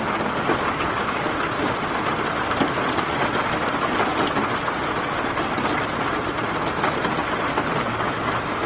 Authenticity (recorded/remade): recorded